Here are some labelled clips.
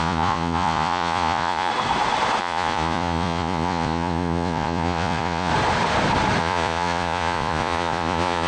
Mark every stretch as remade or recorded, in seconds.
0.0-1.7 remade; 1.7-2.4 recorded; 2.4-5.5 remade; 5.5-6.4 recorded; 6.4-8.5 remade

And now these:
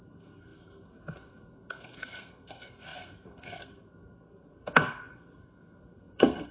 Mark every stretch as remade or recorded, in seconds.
0.0-6.5 remade

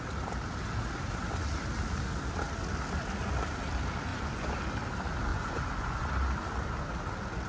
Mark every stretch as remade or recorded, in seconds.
0.0-4.1 recorded; 4.1-4.6 remade; 4.6-5.3 recorded; 5.3-6.1 remade; 6.1-7.5 recorded